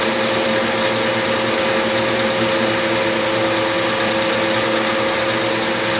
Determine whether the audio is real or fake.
real